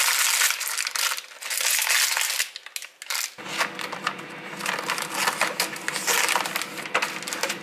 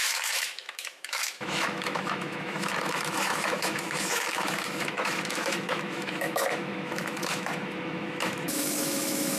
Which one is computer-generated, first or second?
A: second